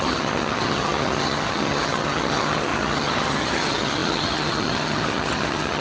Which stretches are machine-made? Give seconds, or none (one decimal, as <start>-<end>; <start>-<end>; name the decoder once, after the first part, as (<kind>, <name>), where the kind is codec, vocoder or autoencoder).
0.0-5.8 (vocoder, HiFi-GAN)